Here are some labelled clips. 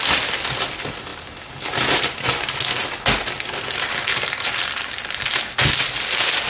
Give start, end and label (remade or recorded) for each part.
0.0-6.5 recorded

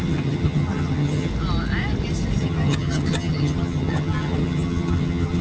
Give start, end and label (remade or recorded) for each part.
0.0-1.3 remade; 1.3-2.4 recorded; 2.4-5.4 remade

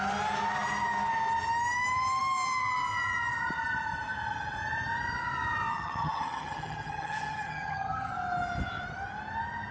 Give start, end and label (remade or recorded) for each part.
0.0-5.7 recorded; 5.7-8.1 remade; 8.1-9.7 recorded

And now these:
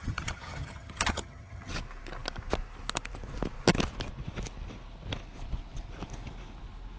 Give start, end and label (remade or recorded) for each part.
0.0-1.7 remade; 1.7-7.0 recorded

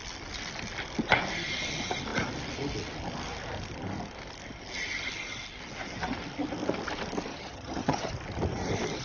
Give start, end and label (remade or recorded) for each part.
0.0-7.3 recorded; 7.3-8.1 remade; 8.1-9.0 recorded

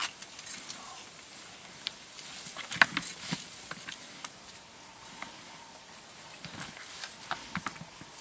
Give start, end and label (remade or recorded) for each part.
0.0-8.2 recorded